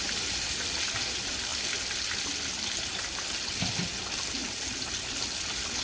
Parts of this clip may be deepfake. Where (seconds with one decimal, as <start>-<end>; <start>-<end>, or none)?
none